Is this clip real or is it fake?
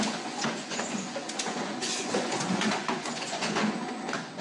fake